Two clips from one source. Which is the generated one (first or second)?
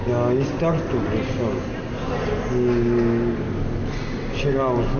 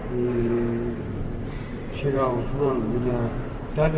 second